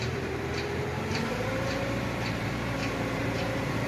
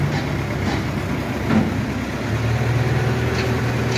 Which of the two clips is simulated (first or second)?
first